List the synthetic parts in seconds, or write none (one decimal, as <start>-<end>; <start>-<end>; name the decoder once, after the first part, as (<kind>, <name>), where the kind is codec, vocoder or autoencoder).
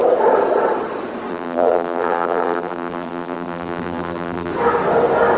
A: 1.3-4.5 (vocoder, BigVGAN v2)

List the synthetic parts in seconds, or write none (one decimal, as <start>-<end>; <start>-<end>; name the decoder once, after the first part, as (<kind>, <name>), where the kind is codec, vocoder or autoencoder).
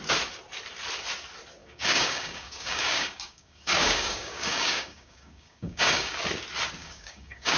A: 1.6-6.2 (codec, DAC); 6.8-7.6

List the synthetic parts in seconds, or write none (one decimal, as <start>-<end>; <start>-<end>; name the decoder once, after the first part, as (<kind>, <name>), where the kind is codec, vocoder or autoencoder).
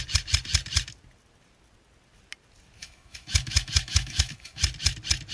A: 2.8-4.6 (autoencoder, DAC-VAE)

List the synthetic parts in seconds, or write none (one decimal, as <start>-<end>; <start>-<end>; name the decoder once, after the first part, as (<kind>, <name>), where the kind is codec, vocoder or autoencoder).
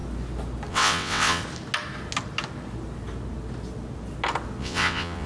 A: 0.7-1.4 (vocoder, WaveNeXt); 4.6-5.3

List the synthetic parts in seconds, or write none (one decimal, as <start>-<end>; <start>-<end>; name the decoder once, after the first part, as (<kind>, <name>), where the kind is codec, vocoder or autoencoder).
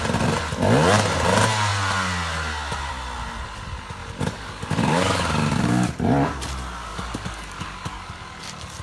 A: 4.0-5.9 (codec, DAC); 6.9-8.4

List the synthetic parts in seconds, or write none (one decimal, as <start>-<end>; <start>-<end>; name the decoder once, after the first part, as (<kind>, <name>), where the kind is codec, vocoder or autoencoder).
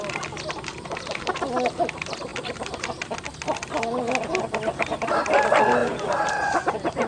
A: 0.7-1.4 (vocoder, BigVGAN v2); 5.8-7.1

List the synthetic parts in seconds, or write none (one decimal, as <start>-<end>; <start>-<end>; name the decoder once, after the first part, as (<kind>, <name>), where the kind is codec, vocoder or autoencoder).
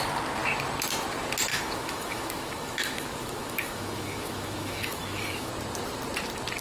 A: 1.5-5.5 (autoencoder, DAC-VAE)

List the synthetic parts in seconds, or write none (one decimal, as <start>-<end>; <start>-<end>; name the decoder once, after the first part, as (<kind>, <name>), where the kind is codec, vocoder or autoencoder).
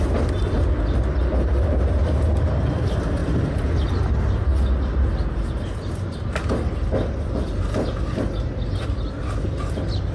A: none